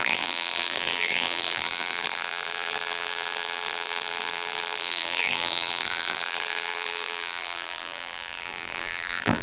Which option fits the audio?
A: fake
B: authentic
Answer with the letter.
A